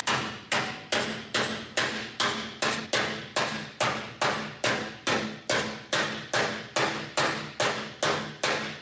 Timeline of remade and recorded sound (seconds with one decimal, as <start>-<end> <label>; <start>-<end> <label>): 0.0-8.8 recorded